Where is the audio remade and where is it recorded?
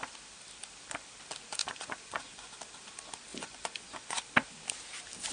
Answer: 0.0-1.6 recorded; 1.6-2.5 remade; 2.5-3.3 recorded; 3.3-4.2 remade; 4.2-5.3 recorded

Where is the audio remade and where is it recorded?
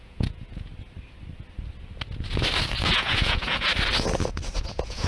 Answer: 0.0-0.7 remade; 0.7-2.8 recorded; 2.8-3.7 remade; 3.7-4.6 recorded; 4.6-5.1 remade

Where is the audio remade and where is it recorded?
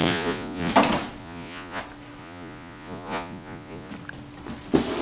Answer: 0.0-0.7 remade; 0.7-1.2 recorded; 1.2-1.8 remade; 1.8-2.2 recorded; 2.2-3.9 remade; 3.9-5.0 recorded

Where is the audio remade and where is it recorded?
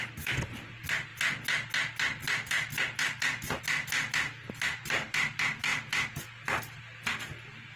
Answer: 0.0-7.8 recorded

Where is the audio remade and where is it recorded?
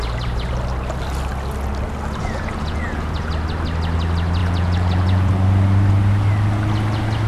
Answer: 0.0-2.2 recorded; 2.2-3.3 remade; 3.3-4.4 recorded; 4.4-5.3 remade; 5.3-7.3 recorded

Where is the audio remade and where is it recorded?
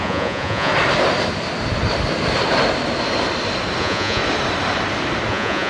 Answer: 0.0-0.7 remade; 0.7-3.8 recorded; 3.8-4.2 remade; 4.2-5.3 recorded; 5.3-5.7 remade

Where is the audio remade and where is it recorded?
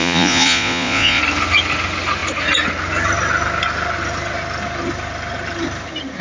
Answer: 0.0-1.2 remade; 1.2-6.2 recorded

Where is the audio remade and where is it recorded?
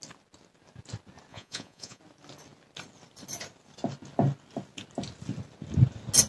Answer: 0.0-1.3 recorded; 1.3-2.0 remade; 2.0-6.3 recorded